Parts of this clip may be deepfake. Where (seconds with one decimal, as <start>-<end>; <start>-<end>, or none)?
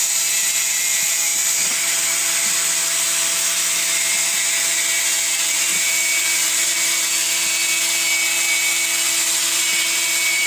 0.0-1.3; 1.9-2.8; 5.0-10.5